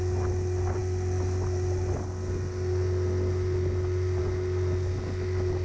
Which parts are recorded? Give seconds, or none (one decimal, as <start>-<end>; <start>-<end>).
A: 0.0-5.6